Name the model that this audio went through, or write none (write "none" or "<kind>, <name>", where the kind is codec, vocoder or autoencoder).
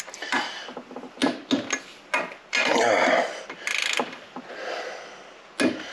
none